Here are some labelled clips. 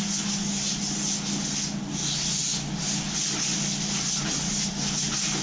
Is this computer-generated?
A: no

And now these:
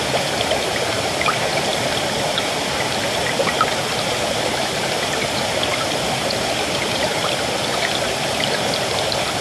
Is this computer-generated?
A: yes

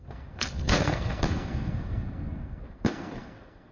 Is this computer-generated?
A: yes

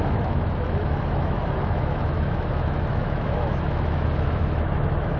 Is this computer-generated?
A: yes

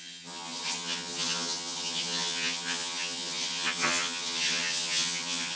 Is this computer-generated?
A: yes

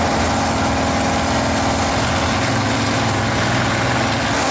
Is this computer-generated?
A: no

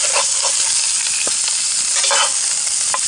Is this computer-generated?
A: no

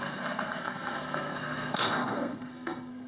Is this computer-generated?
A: yes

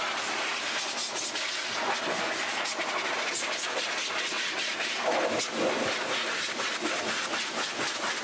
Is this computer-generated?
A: no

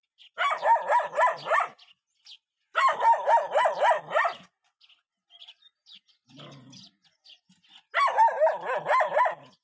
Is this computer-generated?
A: no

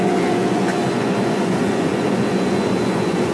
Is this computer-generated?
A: yes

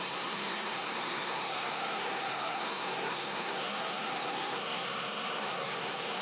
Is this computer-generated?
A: yes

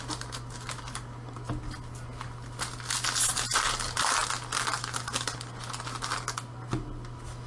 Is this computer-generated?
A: no